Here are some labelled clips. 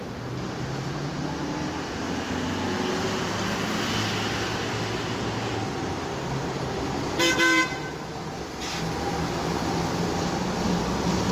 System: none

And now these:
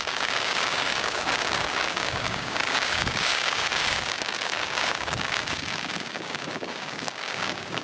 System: codec, DAC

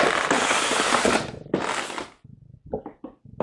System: none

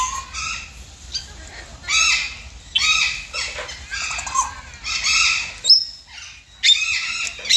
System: none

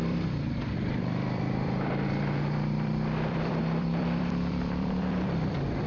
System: vocoder, BigVGAN v2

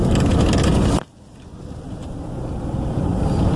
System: none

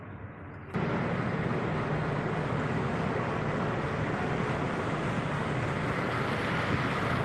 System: none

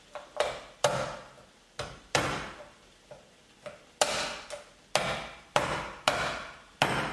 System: none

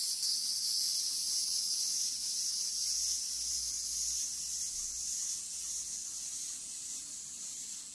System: none